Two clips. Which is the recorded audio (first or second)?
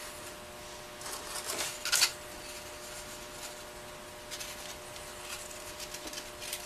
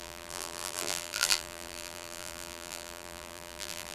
first